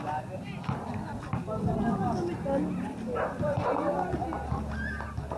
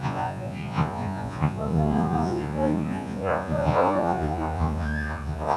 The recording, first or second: first